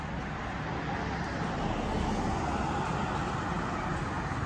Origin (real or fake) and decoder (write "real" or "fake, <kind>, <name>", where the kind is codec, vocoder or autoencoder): real